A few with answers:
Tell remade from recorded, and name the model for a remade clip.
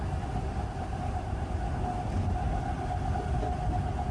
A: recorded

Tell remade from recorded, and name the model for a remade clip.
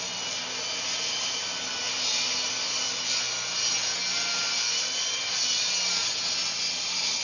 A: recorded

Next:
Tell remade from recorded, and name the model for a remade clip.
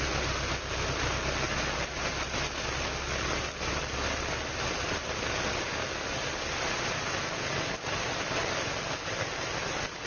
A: recorded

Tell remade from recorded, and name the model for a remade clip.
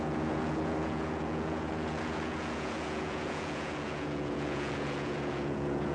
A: remade, vocoder, Vocos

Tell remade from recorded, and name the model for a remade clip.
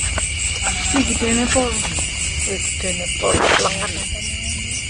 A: recorded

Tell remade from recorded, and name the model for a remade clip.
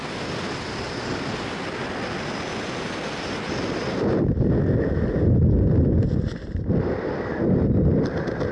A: recorded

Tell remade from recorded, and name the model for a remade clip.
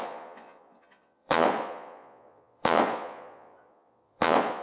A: remade, vocoder, Vocos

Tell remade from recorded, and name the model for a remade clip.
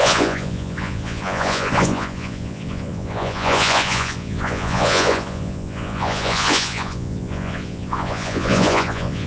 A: remade, vocoder, Vocos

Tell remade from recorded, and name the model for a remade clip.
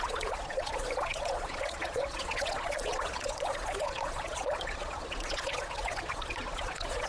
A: remade, vocoder, Vocos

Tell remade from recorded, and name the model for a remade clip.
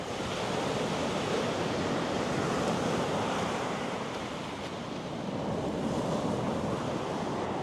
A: recorded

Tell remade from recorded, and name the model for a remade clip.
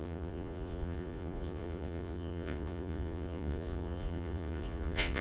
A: remade, vocoder, Vocos